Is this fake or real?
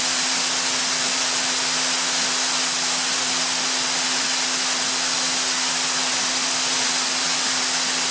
real